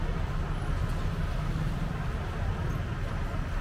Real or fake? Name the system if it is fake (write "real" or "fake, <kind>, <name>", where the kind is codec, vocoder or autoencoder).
real